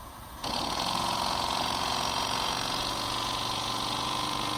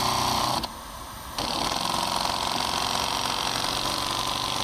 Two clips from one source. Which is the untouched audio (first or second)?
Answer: second